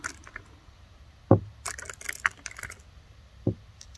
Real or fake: real